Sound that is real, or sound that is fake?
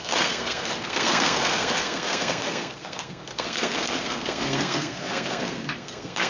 fake